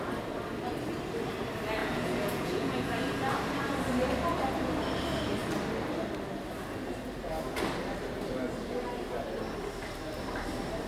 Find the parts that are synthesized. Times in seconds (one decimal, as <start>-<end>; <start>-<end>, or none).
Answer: 1.8-2.9